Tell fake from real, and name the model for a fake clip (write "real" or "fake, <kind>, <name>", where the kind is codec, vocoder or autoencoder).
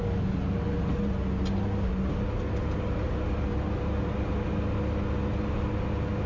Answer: real